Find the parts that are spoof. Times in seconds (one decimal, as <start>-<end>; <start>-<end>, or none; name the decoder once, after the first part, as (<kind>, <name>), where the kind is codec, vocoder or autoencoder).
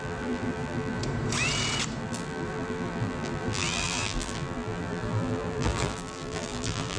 0.0-1.0 (vocoder, BigVGAN v2); 2.0-7.0